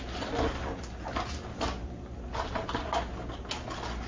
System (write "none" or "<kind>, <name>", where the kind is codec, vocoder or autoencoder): none